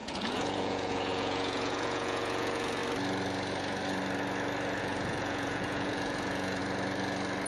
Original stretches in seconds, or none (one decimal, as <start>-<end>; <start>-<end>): 2.8-4.8; 6.6-7.5